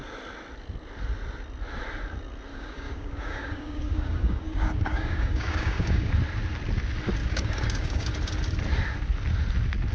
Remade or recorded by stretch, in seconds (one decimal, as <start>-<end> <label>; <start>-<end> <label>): 0.0-2.5 recorded; 2.5-6.1 remade; 6.1-7.2 recorded; 7.2-8.1 remade; 8.1-9.9 recorded